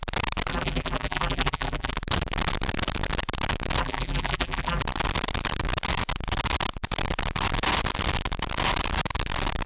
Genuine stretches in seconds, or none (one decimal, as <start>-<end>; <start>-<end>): 0.0-0.5; 1.9-3.8; 4.8-9.7